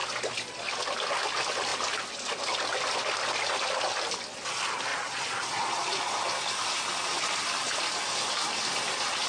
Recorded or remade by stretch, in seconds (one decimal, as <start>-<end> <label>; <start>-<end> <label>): 0.0-4.9 recorded; 4.9-6.2 remade; 6.2-9.3 recorded